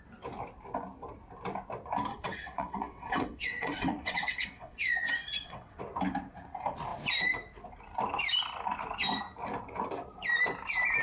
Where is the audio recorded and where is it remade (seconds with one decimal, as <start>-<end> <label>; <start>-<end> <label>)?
0.0-2.1 recorded; 2.1-5.8 remade; 5.8-11.0 recorded